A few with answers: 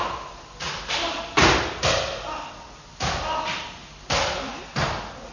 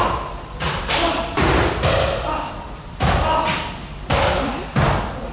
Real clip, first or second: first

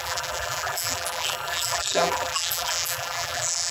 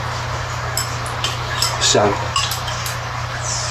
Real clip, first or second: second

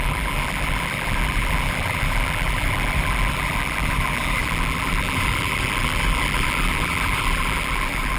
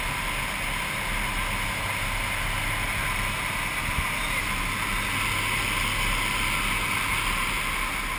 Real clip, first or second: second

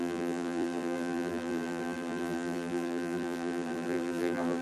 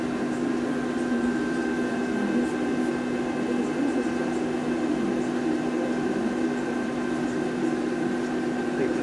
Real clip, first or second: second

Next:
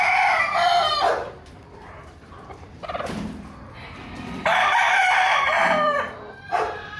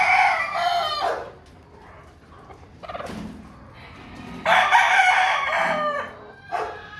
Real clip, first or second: second